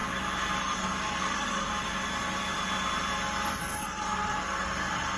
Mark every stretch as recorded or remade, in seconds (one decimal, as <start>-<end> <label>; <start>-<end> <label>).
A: 0.0-0.6 recorded; 0.6-1.7 remade; 1.7-3.6 recorded; 3.6-5.2 remade